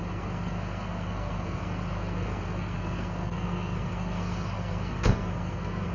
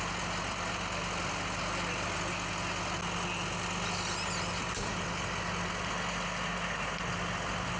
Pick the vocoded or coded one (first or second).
first